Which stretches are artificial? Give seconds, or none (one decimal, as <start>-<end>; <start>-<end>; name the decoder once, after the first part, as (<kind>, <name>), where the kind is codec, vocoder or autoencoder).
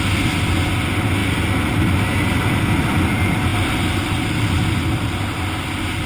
none